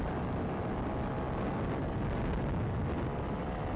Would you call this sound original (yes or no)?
yes